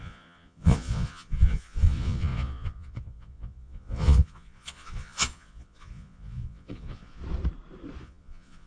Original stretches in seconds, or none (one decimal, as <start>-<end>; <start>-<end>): 7.2-8.0